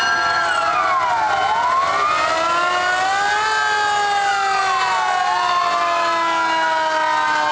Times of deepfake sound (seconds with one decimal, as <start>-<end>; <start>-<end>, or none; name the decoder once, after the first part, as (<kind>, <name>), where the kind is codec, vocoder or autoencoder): none